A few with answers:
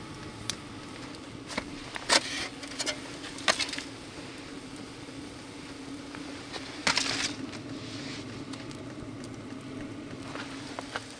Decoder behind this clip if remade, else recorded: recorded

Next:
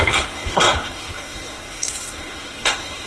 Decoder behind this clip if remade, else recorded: remade, codec, SNAC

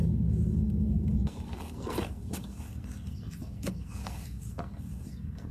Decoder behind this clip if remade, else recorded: remade, codec, SNAC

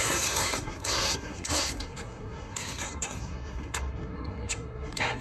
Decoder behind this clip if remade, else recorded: remade, codec, SNAC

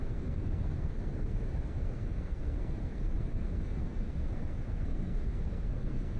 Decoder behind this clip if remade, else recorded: remade, codec, SNAC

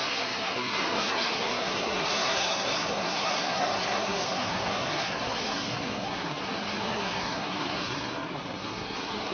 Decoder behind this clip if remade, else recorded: remade, codec, SNAC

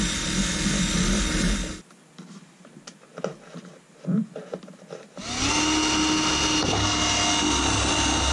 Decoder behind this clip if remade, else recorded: recorded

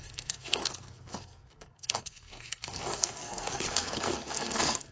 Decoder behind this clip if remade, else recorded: remade, codec, SNAC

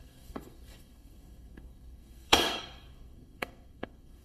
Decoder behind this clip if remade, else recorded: remade, codec, SNAC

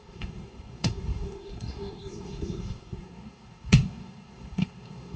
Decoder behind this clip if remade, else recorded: remade, codec, SNAC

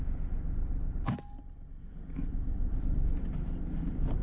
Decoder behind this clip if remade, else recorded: recorded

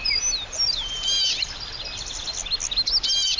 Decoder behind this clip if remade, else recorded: recorded